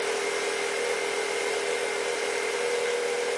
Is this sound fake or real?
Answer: real